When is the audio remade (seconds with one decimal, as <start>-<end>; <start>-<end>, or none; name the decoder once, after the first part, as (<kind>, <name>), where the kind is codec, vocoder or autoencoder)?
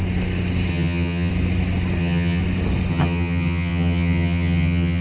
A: 0.7-1.3 (vocoder, HiFi-GAN); 2.0-2.4; 2.9-5.0